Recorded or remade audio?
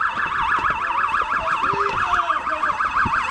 recorded